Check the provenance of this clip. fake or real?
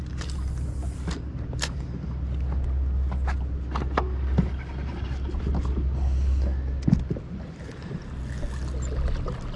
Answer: real